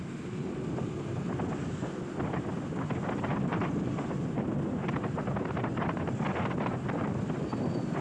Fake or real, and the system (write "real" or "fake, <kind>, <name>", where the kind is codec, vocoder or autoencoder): real